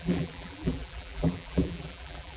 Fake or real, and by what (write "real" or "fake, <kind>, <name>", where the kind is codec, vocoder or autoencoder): fake, vocoder, BigVGAN v2